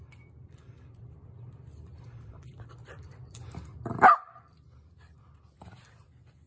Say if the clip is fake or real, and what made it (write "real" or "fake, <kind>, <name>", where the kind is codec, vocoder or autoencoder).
fake, vocoder, BigVGAN v2